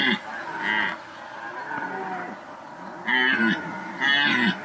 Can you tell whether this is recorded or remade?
recorded